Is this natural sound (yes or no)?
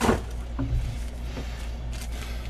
yes